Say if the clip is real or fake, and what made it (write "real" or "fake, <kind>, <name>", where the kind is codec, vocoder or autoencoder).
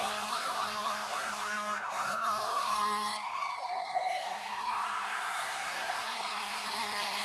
fake, codec, SNAC